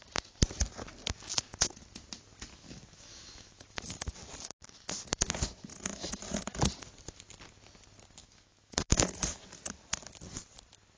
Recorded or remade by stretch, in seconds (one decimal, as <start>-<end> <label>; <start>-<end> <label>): 0.0-2.5 recorded; 2.5-4.1 remade; 4.1-5.7 recorded; 5.7-6.4 remade; 6.4-8.2 recorded; 8.2-9.4 remade; 9.4-11.0 recorded